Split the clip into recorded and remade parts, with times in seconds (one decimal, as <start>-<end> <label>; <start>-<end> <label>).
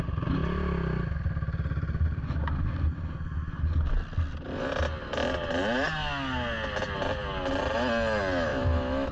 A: 0.0-8.5 recorded; 8.5-9.1 remade